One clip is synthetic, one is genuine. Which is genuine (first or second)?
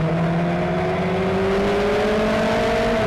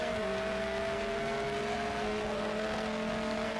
first